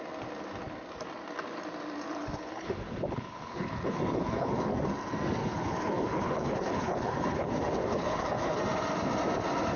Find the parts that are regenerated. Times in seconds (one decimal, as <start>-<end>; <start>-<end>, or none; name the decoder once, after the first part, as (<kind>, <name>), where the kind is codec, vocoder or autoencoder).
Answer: 2.2-4.8 (codec, HILCodec); 5.4-8.6